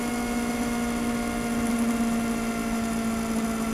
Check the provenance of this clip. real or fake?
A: real